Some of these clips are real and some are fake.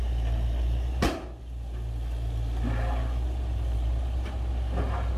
real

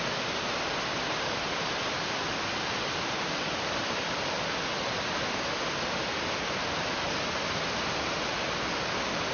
real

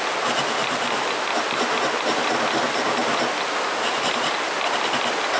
real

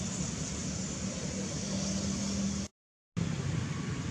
real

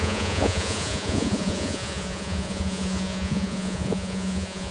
fake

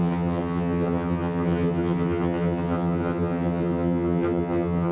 fake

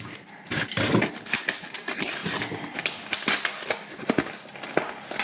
real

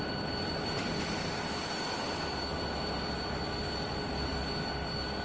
real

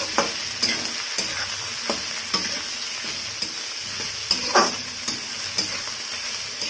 real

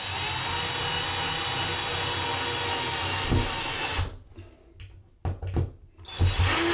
real